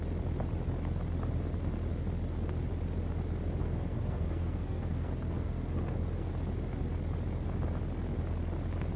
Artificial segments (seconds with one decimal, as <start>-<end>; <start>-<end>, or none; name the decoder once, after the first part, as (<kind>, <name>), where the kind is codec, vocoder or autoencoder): 3.6-6.3 (codec, SNAC)